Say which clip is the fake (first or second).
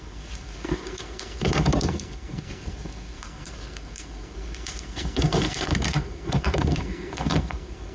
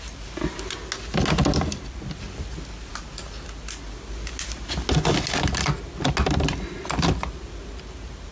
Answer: first